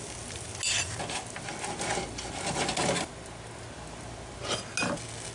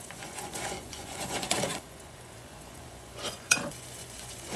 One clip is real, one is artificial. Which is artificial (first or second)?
second